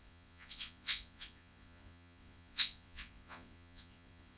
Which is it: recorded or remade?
remade